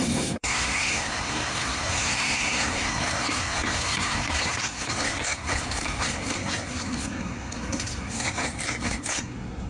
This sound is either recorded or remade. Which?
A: remade